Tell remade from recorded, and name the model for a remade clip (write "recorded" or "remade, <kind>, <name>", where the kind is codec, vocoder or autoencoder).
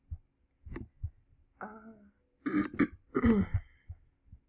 recorded